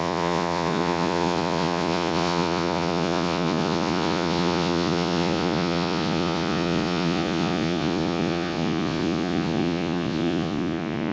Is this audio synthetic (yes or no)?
yes